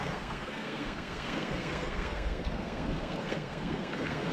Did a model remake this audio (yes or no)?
yes